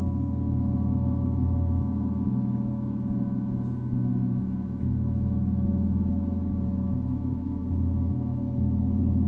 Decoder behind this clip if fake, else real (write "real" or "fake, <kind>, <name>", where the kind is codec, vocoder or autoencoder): fake, autoencoder, DAC-VAE